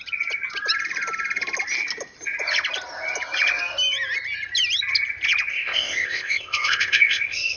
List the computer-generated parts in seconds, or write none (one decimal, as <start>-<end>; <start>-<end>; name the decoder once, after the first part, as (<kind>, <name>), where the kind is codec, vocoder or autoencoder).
5.5-7.6 (codec, ZipCodec)

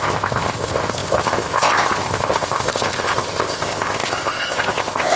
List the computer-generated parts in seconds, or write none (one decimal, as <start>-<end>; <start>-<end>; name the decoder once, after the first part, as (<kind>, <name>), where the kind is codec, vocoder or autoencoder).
0.0-5.2 (codec, ZipCodec)